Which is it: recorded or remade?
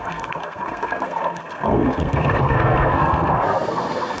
remade